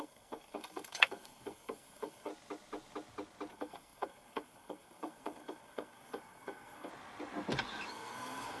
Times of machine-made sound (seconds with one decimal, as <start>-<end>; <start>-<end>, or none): 0.0-2.3; 3.5-6.9; 7.9-8.6